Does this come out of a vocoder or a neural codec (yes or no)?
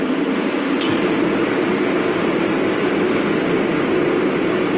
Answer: no